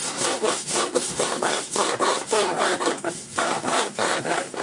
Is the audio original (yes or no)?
no